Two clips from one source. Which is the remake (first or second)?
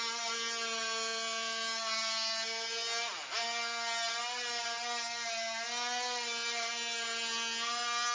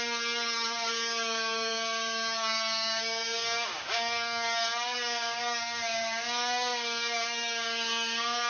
second